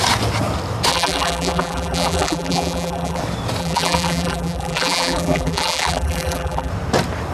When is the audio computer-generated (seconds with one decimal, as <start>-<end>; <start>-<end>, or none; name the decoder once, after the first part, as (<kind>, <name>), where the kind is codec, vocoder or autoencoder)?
0.9-3.2 (vocoder, BigVGAN v2); 3.6-6.7